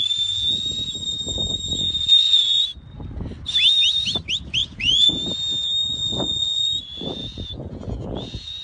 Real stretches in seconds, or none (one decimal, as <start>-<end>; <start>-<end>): 0.0-1.3; 2.6-4.6; 5.2-5.8

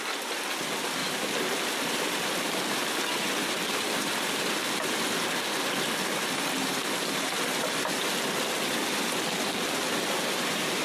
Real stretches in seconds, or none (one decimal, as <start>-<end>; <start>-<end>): 0.0-1.0; 3.0-10.8

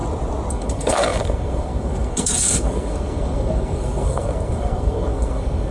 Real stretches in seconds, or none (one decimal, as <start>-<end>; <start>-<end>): 0.0-0.5

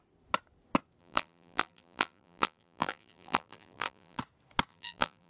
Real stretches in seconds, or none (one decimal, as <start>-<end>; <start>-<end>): 0.0-1.0; 4.2-4.7

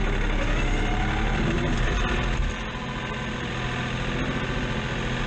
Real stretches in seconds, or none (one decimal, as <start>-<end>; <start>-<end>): 0.0-5.3